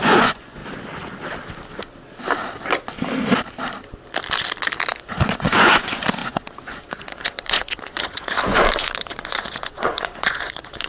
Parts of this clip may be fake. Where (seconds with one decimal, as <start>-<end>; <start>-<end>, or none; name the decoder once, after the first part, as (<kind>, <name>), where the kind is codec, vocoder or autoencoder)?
0.0-0.6 (vocoder, Vocos); 4.9-10.9